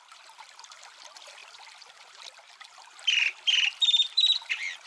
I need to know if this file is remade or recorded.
remade